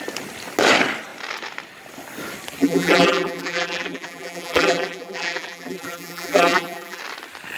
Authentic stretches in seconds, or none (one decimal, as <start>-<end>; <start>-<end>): 0.0-2.6; 7.0-7.6